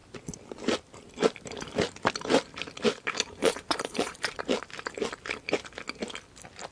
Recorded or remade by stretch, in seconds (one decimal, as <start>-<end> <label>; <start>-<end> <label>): 0.0-3.4 recorded; 3.4-4.4 remade; 4.4-6.7 recorded